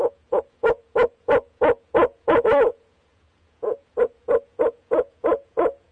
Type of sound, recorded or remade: remade